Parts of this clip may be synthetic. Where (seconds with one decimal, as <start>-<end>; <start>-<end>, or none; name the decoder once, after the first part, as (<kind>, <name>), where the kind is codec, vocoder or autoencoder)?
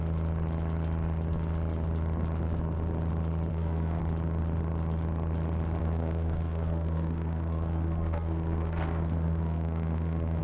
3.5-4.0 (codec, SNAC); 5.8-10.4